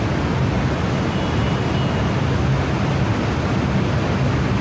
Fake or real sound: real